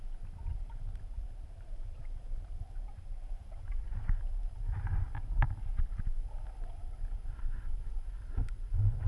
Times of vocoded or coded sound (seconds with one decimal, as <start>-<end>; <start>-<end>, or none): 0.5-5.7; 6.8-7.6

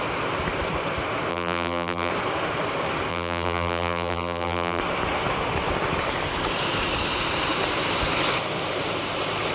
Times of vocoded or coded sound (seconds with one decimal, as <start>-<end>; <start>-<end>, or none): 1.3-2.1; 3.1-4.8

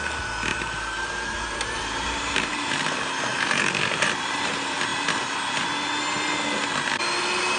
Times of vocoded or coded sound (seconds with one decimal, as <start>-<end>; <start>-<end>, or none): 0.5-2.8; 3.3-4.5

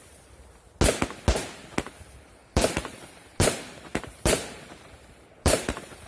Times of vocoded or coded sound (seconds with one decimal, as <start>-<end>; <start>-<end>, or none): 2.4-6.1